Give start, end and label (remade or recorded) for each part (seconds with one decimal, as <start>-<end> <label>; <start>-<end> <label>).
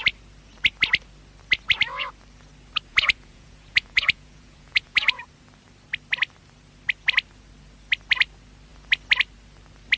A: 0.0-2.9 recorded; 2.9-5.2 remade; 5.2-10.0 recorded